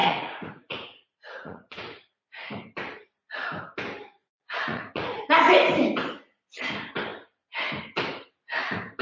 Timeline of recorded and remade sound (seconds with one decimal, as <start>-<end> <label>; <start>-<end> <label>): 0.0-2.5 remade; 2.5-4.2 recorded; 4.2-5.2 remade; 5.2-9.0 recorded